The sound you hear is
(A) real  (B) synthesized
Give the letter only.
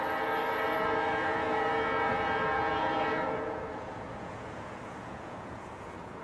B